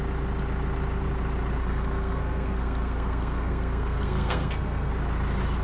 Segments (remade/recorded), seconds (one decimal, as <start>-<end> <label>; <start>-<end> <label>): 0.0-1.6 recorded; 1.6-4.9 remade; 4.9-5.6 recorded